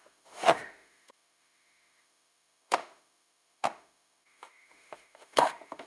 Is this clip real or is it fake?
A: fake